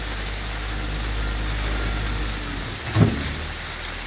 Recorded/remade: recorded